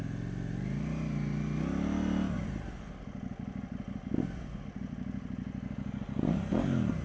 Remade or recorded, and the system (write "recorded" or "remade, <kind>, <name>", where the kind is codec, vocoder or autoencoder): recorded